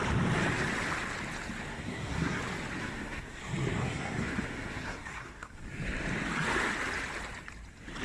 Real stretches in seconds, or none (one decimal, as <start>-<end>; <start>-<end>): 0.0-1.7; 2.4-2.8; 3.4-3.8; 5.6-8.0